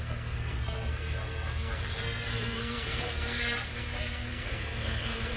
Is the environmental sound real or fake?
fake